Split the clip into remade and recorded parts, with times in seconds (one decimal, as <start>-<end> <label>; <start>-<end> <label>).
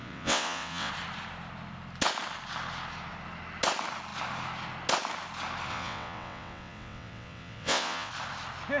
0.0-0.9 remade; 0.9-5.7 recorded; 5.7-8.1 remade; 8.1-8.8 recorded